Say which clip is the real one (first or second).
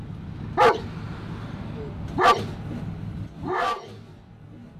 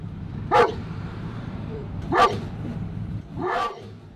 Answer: first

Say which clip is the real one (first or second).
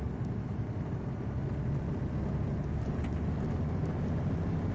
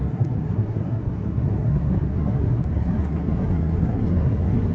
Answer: first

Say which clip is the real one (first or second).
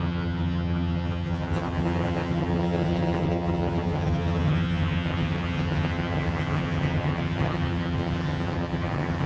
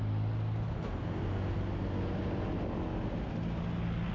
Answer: second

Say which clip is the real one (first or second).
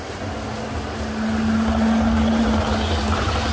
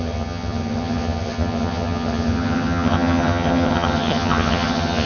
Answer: first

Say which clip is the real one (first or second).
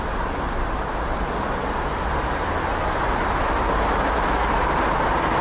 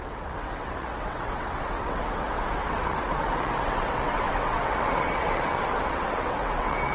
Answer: first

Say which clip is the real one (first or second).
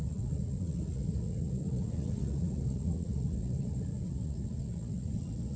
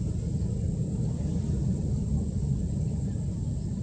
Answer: second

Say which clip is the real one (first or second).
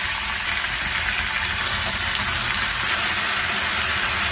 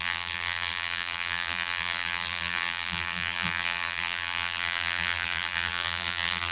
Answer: first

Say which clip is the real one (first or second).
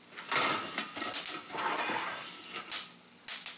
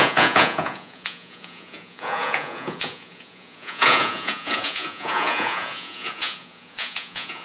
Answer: first